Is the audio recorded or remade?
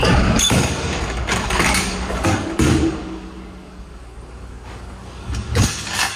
remade